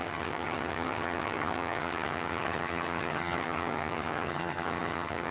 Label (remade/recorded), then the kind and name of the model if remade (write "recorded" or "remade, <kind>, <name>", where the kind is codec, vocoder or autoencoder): remade, vocoder, HiFi-GAN